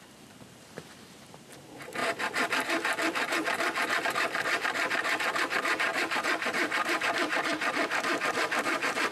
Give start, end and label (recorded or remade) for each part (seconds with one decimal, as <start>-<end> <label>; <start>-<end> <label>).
0.0-9.1 remade